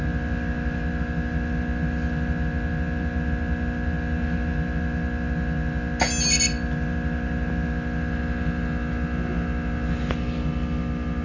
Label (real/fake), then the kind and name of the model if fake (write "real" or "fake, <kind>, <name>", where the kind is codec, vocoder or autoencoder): real